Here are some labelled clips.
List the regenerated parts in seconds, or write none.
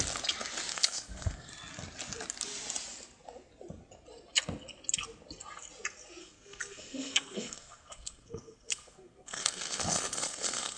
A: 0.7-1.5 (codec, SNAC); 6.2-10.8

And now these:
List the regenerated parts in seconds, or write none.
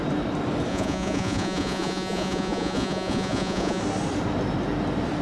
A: 0.7-3.8 (vocoder, Vocos)